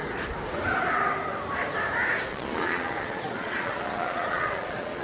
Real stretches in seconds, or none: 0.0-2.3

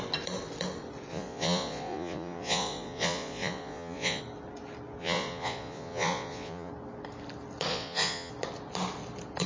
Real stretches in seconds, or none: 0.0-1.1; 4.2-5.0; 6.7-7.7; 8.3-9.5

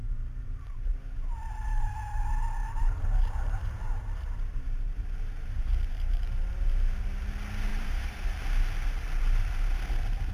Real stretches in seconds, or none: 2.0-2.6; 6.5-7.7; 8.4-10.3